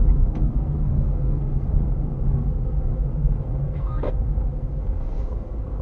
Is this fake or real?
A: fake